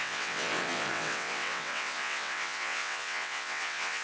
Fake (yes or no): yes